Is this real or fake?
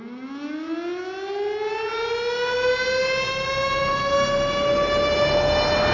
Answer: real